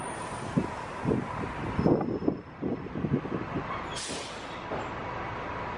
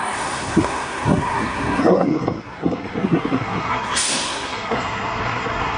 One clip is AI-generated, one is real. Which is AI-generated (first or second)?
second